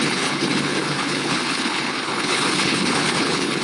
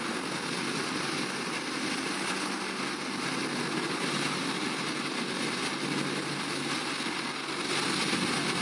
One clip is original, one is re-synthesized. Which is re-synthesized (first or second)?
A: first